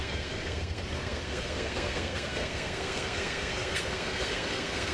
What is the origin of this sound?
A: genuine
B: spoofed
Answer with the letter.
B